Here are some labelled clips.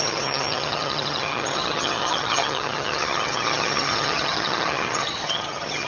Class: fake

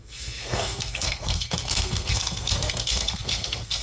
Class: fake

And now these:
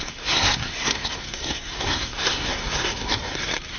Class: fake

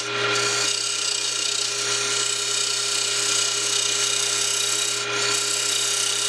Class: real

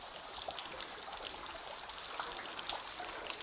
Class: real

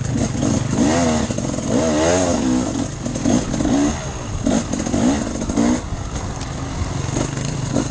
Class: real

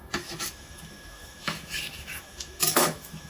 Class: fake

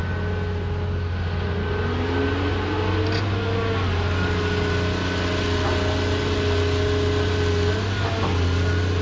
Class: real